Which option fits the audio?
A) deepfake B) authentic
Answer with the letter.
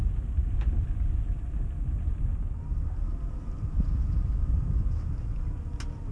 B